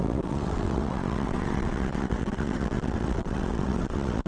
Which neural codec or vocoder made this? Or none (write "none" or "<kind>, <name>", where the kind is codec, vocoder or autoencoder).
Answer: vocoder, WaveNeXt